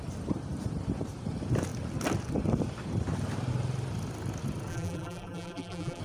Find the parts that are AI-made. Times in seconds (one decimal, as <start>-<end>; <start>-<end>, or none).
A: 4.7-6.0